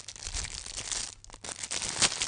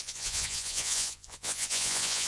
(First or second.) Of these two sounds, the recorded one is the first